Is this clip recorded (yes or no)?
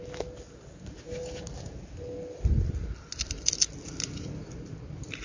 yes